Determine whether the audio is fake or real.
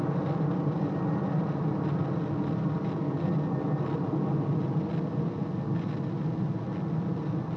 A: real